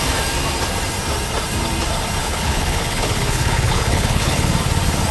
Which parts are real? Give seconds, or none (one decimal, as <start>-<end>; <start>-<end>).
0.0-2.2; 4.5-5.1